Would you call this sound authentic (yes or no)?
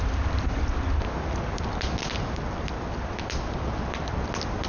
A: yes